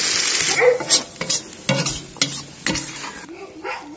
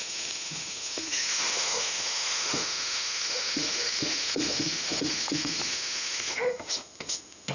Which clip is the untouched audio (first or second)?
first